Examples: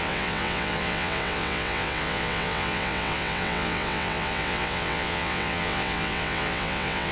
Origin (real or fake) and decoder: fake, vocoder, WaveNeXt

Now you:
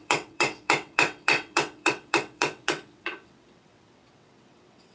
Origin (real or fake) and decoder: fake, vocoder, WaveNeXt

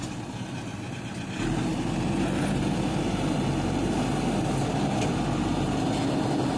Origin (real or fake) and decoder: real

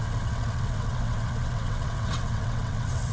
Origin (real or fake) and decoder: fake, vocoder, WaveNeXt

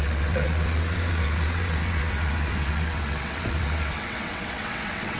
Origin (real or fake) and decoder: fake, vocoder, WaveNeXt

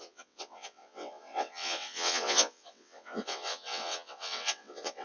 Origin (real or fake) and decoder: fake, vocoder, WaveNeXt